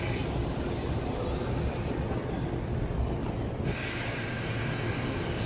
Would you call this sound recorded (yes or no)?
yes